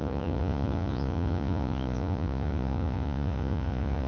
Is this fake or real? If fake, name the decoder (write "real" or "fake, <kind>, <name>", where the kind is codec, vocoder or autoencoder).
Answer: fake, vocoder, Vocos